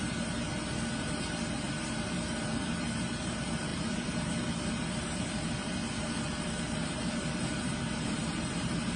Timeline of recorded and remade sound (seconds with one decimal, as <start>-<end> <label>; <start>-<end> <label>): 0.0-0.5 remade; 0.5-1.2 recorded; 1.2-5.8 remade; 5.8-6.9 recorded; 6.9-9.0 remade